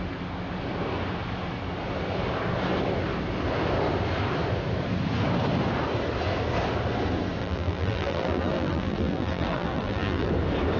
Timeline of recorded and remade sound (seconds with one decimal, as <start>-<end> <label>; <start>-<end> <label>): 0.0-7.4 recorded; 7.4-10.3 remade; 10.3-10.8 recorded